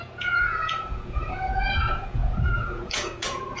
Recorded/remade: remade